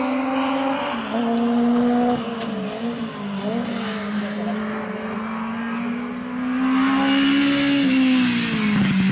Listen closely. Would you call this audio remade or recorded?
recorded